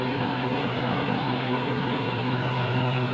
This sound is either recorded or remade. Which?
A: remade